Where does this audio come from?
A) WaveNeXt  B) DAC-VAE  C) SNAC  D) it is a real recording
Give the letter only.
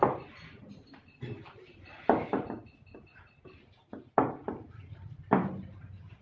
D